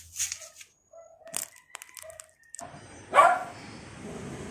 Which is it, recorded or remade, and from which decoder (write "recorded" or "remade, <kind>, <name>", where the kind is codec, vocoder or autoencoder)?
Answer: recorded